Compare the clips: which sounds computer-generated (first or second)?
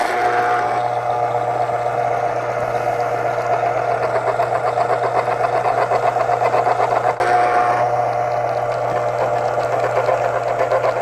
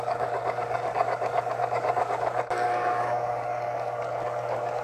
second